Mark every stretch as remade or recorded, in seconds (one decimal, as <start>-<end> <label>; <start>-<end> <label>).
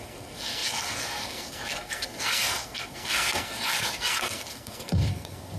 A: 0.0-5.6 remade